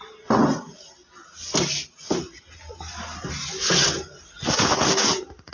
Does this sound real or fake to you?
real